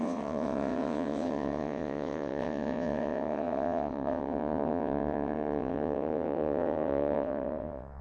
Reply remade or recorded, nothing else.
remade